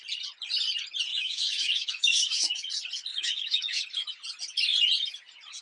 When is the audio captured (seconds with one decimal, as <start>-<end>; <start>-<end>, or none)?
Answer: 0.0-1.1; 2.7-3.1; 3.8-5.6